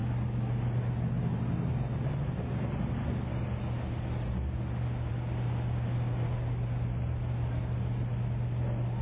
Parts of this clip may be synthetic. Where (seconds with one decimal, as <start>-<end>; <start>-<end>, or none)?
none